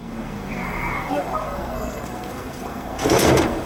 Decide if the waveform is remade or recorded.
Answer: remade